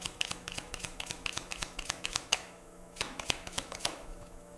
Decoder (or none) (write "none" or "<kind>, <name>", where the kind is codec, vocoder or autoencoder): autoencoder, DAC-VAE